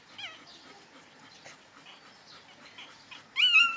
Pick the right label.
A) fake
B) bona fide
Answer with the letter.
B